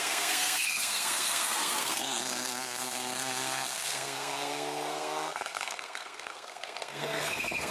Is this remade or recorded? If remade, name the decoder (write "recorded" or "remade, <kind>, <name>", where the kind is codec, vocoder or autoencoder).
remade, codec, SNAC